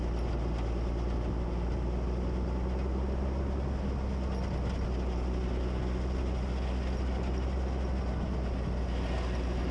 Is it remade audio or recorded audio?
recorded